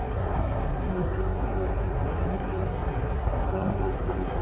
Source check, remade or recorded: remade